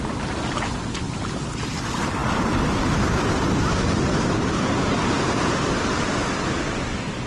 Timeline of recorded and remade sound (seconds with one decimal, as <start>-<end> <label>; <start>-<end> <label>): 0.0-7.3 recorded